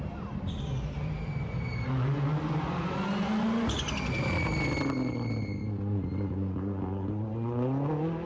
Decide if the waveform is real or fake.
real